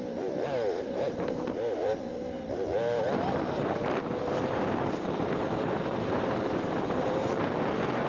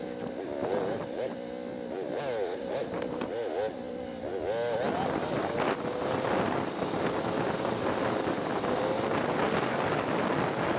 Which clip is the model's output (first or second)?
first